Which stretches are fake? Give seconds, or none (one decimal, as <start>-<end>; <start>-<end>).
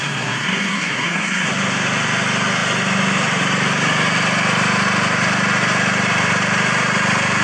0.0-1.5